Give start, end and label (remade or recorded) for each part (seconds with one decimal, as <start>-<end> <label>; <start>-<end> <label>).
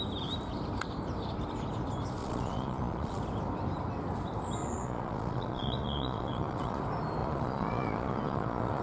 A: 0.0-2.2 recorded; 2.2-3.2 remade; 3.2-4.6 recorded; 4.6-6.8 remade; 6.8-7.2 recorded; 7.2-8.8 remade